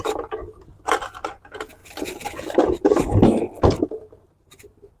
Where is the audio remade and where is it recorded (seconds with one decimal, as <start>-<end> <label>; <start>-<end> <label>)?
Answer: 0.0-1.8 recorded; 1.8-5.0 remade